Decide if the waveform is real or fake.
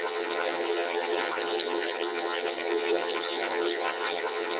fake